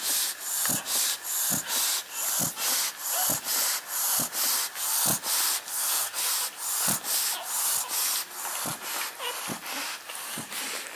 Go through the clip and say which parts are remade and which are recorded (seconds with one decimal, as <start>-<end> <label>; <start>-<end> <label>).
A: 0.0-5.7 recorded; 5.7-6.3 remade; 6.3-11.0 recorded